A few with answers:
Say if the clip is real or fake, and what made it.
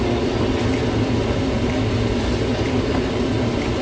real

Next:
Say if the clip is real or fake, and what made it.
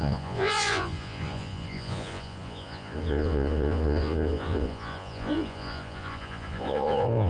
fake, vocoder, Vocos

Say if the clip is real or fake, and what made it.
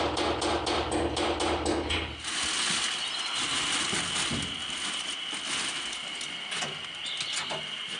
real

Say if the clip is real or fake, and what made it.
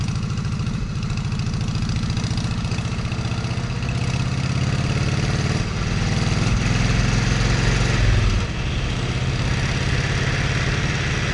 real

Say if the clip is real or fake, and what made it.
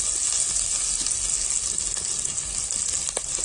real